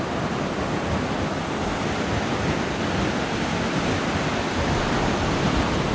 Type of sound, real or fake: real